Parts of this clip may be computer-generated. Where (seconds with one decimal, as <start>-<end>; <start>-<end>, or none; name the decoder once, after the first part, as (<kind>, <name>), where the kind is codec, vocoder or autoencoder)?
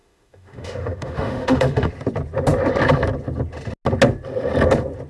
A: 0.0-1.9 (autoencoder, DAC-VAE)